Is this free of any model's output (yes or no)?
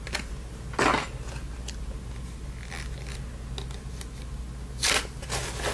yes